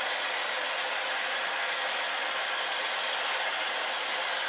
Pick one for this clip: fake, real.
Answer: real